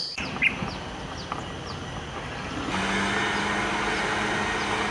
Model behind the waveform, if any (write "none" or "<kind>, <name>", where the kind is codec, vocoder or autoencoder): none